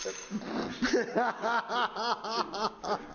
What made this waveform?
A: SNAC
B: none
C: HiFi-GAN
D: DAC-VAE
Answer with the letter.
B